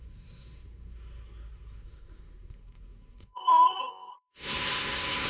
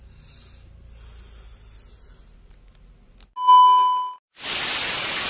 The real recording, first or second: second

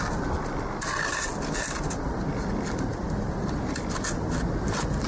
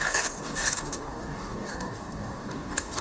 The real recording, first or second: first